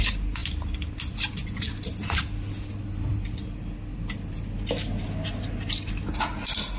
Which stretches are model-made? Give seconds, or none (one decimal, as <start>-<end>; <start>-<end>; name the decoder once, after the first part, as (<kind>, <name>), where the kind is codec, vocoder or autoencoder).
none